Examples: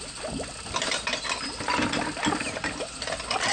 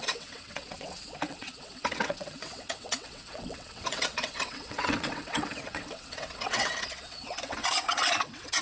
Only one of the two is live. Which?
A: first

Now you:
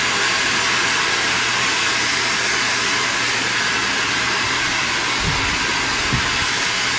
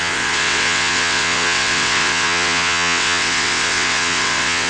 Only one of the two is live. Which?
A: first